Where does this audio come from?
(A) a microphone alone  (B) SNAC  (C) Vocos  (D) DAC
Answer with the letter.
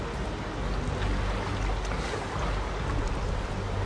A